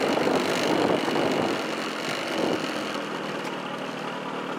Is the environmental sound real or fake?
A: real